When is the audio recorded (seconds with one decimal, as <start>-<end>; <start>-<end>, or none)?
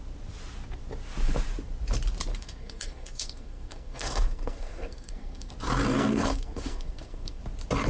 0.0-2.3; 5.5-5.9; 7.4-7.9